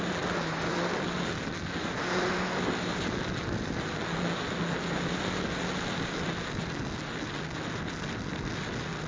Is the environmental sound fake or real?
real